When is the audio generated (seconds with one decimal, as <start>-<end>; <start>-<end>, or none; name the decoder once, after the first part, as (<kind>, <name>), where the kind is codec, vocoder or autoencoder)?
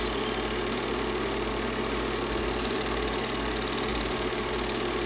3.9-4.5 (vocoder, BigVGAN v2)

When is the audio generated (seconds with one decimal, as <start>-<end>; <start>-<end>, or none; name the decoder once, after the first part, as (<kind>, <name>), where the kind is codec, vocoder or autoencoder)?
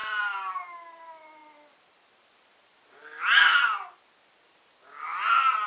none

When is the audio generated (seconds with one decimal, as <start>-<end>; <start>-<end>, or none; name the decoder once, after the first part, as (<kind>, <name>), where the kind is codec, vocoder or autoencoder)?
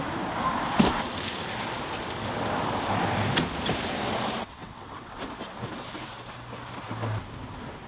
4.4-5.2 (vocoder, WaveNeXt)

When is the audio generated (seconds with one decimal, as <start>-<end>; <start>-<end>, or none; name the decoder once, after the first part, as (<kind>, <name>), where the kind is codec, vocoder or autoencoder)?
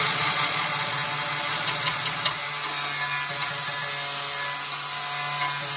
0.0-1.0 (vocoder, Vocos); 1.5-2.4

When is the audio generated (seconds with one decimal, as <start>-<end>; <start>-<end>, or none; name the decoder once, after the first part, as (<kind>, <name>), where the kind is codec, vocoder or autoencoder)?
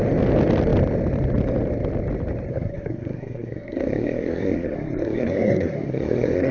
2.5-6.5 (codec, SNAC)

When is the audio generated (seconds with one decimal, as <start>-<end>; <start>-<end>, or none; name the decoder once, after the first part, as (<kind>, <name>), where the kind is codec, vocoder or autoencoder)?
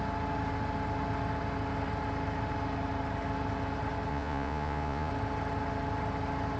4.1-5.1 (vocoder, Vocos)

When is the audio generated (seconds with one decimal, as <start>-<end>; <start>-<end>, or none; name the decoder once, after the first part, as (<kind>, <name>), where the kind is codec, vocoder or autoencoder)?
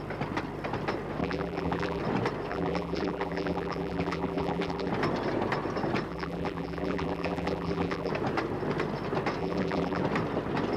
1.2-2.0 (vocoder, BigVGAN v2); 2.5-4.9; 6.1-8.1; 9.4-10.0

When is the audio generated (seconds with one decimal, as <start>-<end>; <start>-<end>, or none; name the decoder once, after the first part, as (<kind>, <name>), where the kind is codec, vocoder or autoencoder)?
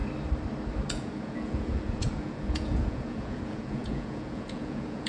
0.9-5.1 (vocoder, Vocos)